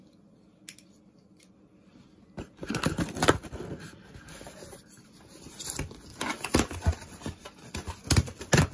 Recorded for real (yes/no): yes